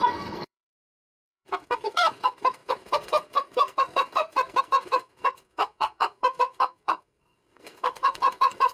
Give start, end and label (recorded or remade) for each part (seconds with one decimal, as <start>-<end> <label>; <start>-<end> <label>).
0.0-8.7 remade